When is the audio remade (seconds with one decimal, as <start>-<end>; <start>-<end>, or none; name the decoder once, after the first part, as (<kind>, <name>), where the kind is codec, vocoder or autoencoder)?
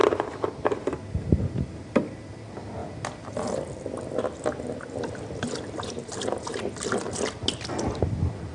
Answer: none